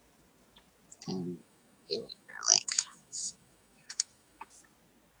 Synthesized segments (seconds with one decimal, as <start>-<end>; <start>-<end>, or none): 1.4-4.5